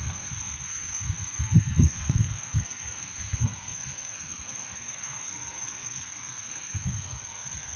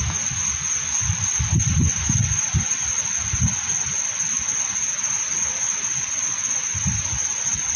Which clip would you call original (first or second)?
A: second